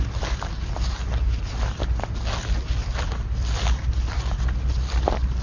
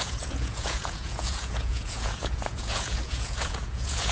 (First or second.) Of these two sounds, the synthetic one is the second